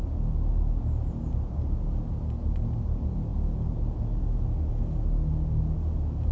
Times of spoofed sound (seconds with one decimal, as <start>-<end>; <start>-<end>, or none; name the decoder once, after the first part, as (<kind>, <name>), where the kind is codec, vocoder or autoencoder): none